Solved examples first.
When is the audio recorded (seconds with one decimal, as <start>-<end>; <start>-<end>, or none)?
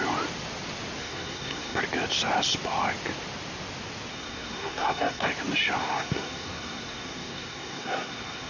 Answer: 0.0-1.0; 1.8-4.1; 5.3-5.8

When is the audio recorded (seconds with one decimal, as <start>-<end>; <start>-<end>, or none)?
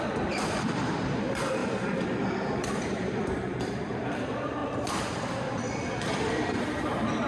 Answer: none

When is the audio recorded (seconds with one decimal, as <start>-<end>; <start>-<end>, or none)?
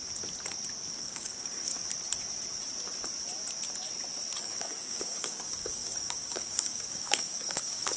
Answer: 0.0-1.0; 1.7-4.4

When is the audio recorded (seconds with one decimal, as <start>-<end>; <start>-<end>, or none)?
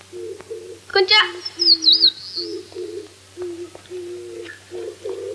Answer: 0.0-5.3